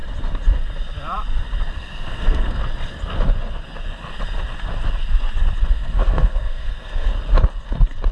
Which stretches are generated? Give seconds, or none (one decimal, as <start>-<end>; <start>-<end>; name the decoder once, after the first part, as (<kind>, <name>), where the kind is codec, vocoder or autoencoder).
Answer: 1.7-2.6 (codec, SNAC); 5.7-7.1